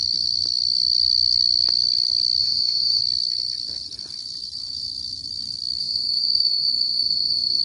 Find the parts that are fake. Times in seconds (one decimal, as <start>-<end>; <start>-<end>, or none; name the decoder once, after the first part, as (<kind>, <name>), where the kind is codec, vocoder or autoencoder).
2.4-3.0 (autoencoder, DAC-VAE); 5.8-7.6